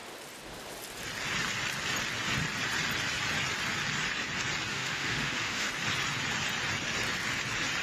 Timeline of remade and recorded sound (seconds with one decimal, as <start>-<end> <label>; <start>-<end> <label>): 0.0-4.7 recorded; 4.7-5.7 remade; 5.7-7.8 recorded